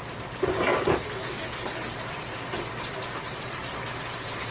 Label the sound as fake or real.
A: real